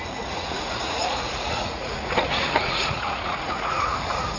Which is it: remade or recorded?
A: remade